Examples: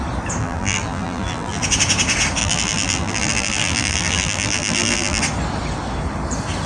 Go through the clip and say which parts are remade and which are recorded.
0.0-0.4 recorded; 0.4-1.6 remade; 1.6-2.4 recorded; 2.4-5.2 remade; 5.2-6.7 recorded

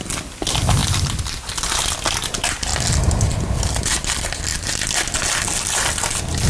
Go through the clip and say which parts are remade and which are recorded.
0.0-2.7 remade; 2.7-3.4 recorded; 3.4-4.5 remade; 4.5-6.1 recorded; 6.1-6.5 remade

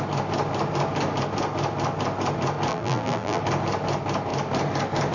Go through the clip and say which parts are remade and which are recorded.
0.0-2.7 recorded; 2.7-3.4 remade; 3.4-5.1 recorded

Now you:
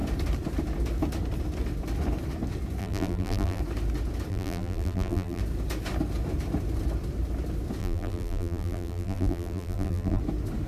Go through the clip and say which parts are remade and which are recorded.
0.0-2.8 recorded; 2.8-3.6 remade; 3.6-4.3 recorded; 4.3-5.4 remade; 5.4-7.8 recorded; 7.8-10.2 remade; 10.2-10.7 recorded

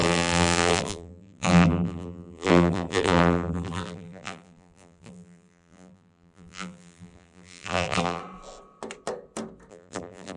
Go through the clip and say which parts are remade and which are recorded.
0.0-8.2 remade; 8.2-9.7 recorded; 9.7-10.4 remade

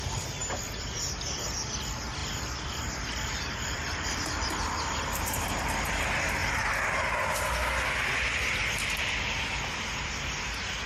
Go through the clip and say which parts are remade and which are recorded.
0.0-2.2 recorded; 2.2-4.5 remade; 4.5-10.9 recorded

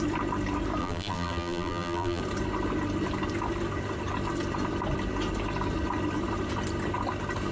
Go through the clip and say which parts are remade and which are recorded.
0.0-0.8 recorded; 0.8-2.2 remade; 2.2-7.5 recorded